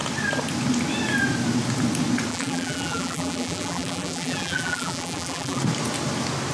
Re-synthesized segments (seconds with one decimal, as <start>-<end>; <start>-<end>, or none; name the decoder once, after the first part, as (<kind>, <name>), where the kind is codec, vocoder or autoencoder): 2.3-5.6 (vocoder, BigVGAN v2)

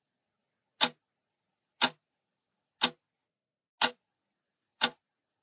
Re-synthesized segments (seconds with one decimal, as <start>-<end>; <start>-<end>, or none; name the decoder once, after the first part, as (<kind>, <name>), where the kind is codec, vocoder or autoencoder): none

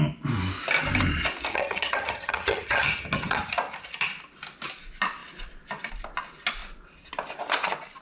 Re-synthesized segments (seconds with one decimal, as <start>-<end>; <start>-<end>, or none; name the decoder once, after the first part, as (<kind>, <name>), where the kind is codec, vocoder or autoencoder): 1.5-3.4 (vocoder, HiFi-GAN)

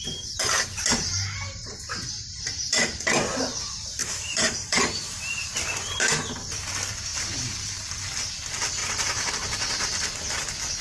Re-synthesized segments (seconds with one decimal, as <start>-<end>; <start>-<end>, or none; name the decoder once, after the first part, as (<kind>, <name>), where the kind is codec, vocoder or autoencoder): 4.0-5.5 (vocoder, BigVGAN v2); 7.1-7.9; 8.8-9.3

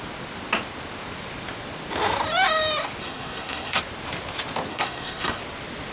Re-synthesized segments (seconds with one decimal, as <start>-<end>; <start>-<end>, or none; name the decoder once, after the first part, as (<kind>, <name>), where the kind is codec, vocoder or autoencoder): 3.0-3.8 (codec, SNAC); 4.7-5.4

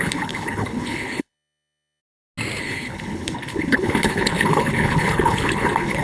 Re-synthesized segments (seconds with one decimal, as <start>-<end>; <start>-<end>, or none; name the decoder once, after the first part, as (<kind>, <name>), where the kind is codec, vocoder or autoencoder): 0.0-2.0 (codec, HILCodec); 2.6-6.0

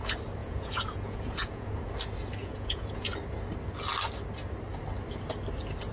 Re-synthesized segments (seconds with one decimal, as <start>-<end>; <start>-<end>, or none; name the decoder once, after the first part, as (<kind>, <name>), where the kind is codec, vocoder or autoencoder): 0.4-1.9 (vocoder, Vocos); 2.4-3.1

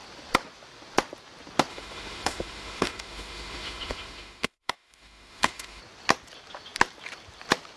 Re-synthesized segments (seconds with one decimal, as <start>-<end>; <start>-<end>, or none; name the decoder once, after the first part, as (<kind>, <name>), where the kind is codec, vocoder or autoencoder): 1.7-5.8 (autoencoder, DAC-VAE)